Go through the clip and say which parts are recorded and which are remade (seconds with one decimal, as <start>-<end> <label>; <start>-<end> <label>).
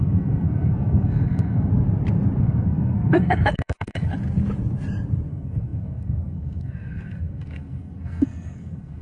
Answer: 0.0-1.7 remade; 1.7-2.4 recorded; 2.4-4.1 remade; 4.1-5.3 recorded; 5.3-9.0 remade